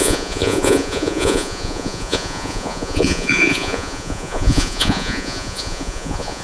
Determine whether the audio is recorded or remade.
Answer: remade